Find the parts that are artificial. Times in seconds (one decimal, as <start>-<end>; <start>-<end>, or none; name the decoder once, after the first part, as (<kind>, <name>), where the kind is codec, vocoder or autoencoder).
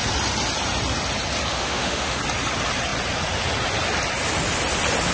1.5-2.2 (autoencoder, DAC-VAE)